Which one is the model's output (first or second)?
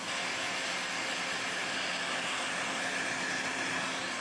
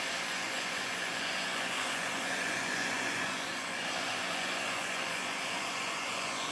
second